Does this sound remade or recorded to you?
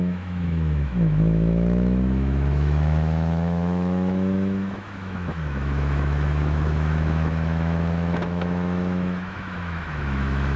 remade